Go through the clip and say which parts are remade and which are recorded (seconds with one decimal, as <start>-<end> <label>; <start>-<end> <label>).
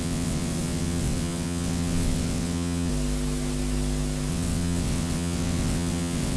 0.0-2.9 remade; 2.9-4.3 recorded; 4.3-6.4 remade